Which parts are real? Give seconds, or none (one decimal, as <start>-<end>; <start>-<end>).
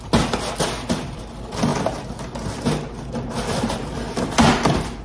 0.0-5.0